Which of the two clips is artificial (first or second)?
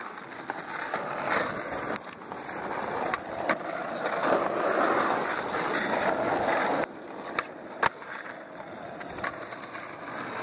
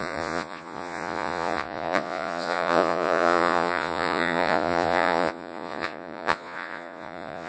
second